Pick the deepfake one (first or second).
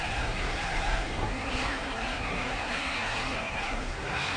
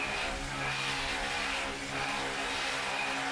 first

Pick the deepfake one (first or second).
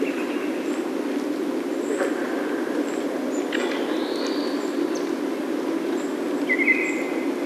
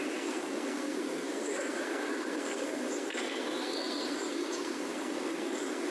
second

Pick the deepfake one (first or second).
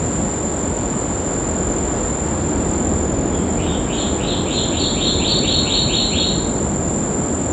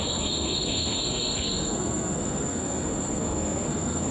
second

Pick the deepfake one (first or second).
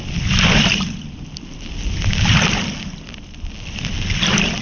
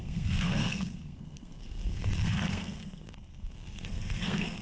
second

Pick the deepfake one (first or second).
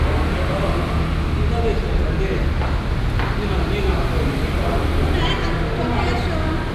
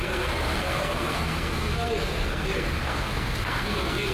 second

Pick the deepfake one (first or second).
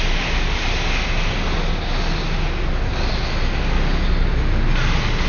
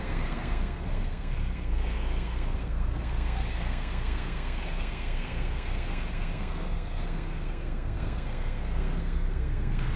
second